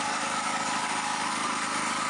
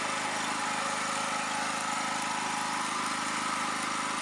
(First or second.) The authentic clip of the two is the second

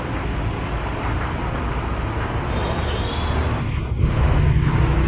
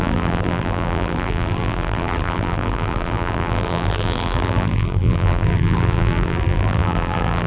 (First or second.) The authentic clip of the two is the first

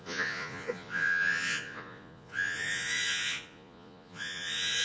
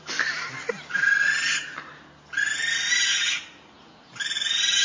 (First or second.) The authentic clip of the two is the second